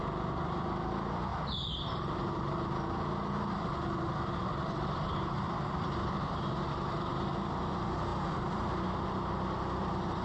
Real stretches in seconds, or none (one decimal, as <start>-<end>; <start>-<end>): 0.0-1.3; 6.4-10.2